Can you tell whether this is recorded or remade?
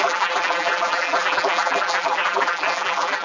remade